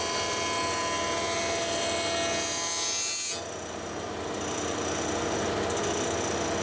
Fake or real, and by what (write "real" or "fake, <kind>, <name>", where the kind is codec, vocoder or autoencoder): real